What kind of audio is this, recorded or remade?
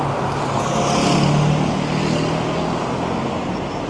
recorded